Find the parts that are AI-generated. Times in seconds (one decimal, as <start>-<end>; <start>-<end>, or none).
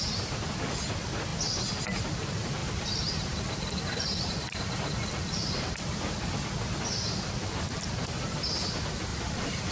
2.6-5.8; 9.1-9.7